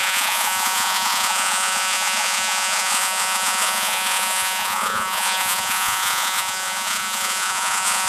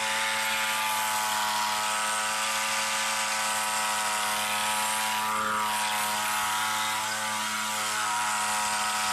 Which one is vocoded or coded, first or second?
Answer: first